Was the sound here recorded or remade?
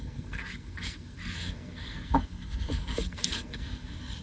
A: remade